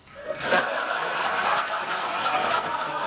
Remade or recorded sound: remade